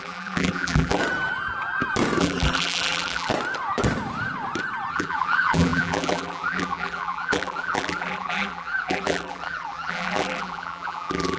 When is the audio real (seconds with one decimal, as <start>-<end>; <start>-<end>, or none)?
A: 1.0-2.2; 3.3-4.9